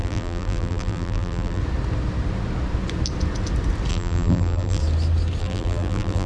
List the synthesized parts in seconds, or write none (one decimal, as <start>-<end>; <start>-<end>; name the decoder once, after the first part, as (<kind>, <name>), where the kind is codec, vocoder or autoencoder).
0.0-1.6 (vocoder, BigVGAN v2); 3.9-4.8; 5.4-6.3

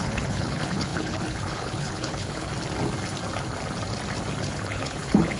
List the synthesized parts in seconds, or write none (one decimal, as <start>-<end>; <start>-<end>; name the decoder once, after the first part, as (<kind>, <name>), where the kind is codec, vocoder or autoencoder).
0.0-2.5 (codec, HILCodec); 4.4-5.4

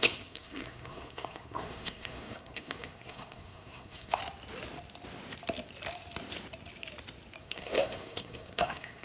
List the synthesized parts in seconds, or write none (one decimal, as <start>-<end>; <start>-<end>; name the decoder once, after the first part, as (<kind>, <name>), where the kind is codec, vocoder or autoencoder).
0.0-4.2 (codec, SNAC); 7.4-9.0